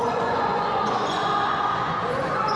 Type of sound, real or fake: fake